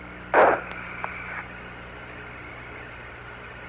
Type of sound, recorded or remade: recorded